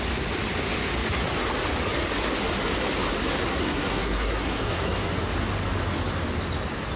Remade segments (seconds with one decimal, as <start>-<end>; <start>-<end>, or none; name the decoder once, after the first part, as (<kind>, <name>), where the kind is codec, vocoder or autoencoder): 3.5-5.1 (codec, SNAC)